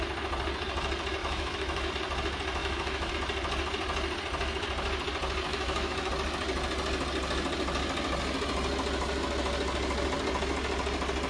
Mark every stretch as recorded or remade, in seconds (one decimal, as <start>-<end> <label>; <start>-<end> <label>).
0.0-1.2 recorded; 1.2-1.9 remade; 1.9-2.6 recorded; 2.6-3.1 remade; 3.1-5.5 recorded; 5.5-6.1 remade; 6.1-11.3 recorded